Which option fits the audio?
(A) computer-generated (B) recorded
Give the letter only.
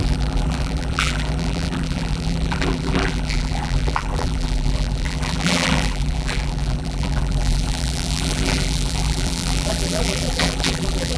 A